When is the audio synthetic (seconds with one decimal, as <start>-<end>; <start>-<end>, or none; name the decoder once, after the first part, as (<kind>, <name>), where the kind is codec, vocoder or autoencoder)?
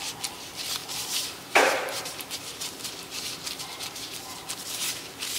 0.8-4.0 (vocoder, BigVGAN v2)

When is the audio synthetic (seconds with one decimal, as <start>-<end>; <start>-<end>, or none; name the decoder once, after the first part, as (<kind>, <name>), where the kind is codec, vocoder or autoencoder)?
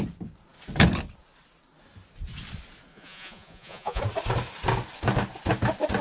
2.9-4.0 (vocoder, Vocos)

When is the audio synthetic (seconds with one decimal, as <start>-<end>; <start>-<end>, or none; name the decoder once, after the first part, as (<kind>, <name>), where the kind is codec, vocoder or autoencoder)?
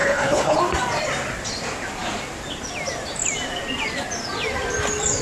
0.0-0.6 (codec, HILCodec)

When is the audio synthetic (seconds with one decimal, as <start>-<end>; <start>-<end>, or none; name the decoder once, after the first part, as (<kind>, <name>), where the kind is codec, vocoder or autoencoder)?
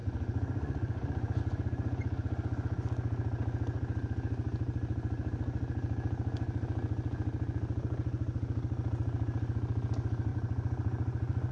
0.0-1.4 (vocoder, Vocos); 10.3-11.5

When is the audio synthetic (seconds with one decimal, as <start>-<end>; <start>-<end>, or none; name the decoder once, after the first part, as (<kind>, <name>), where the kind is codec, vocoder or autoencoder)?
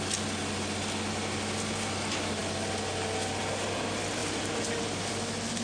none